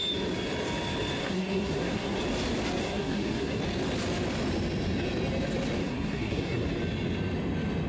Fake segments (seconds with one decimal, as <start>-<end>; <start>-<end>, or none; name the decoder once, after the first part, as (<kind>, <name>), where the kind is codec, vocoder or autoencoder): 1.2-2.2 (codec, SNAC); 2.8-3.6; 5.8-6.7